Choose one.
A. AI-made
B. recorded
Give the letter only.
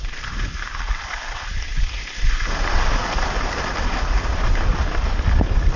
B